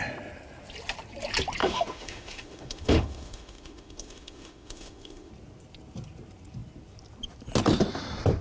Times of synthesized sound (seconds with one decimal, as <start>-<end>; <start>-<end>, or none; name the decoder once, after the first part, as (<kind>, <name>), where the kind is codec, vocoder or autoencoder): 1.6-5.3 (autoencoder, DAC-VAE)